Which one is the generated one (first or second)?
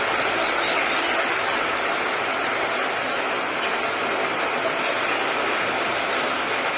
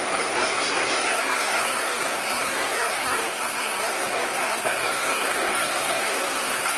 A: second